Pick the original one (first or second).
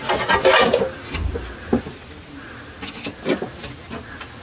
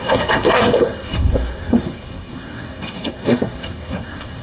first